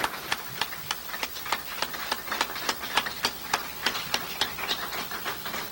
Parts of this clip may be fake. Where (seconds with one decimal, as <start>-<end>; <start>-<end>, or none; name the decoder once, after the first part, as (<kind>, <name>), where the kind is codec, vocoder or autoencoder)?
none

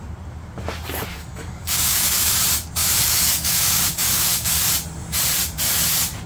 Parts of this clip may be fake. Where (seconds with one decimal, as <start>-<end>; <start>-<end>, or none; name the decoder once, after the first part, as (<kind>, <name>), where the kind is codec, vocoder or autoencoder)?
1.1-2.4 (codec, DAC); 2.8-4.7

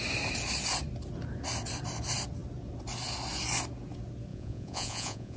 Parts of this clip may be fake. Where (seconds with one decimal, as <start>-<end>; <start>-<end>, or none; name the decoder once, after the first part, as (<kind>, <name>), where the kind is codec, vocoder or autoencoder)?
4.3-5.4 (vocoder, Vocos)

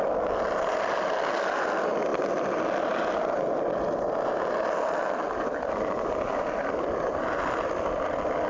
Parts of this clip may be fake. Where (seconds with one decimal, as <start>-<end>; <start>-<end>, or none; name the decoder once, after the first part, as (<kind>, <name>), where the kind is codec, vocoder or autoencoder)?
none

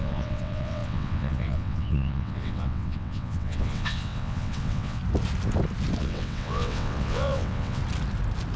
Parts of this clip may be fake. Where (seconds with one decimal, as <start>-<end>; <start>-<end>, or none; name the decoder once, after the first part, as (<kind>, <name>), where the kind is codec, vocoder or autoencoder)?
0.0-5.0 (vocoder, WaveNeXt); 6.0-7.8